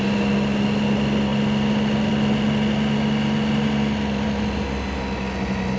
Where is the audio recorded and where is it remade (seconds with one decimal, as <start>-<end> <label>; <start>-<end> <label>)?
0.0-5.8 recorded